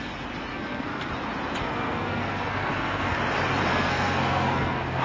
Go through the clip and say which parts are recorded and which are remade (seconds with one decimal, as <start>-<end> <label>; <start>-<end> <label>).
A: 0.0-0.5 recorded; 0.5-1.1 remade; 1.1-1.6 recorded; 1.6-3.2 remade; 3.2-3.7 recorded; 3.7-5.0 remade